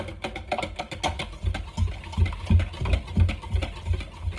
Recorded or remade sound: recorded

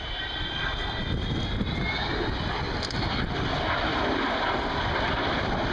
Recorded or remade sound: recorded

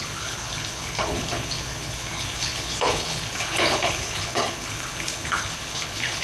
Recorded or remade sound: remade